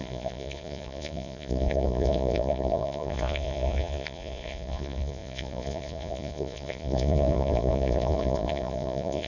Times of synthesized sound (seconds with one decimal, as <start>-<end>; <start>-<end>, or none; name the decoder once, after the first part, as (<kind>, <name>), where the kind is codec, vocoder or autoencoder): 0.0-9.3 (vocoder, Vocos)